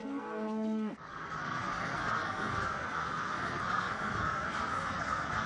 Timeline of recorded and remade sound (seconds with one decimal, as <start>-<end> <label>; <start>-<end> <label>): 0.0-5.5 remade